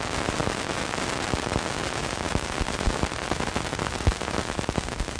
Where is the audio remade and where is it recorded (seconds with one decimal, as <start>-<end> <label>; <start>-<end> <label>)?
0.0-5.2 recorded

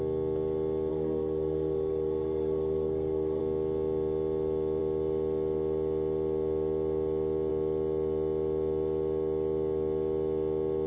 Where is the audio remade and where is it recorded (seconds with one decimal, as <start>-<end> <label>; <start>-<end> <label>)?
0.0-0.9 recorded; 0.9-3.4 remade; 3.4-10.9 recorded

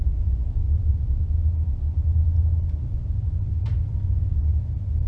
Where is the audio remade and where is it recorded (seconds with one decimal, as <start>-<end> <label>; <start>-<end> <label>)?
0.0-0.6 remade; 0.6-2.7 recorded; 2.7-5.1 remade

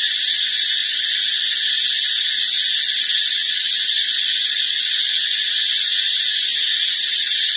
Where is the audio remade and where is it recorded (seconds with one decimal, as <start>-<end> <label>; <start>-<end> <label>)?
0.0-0.8 remade; 0.8-3.0 recorded; 3.0-6.5 remade; 6.5-7.6 recorded